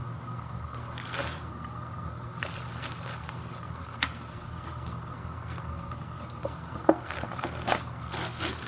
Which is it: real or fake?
fake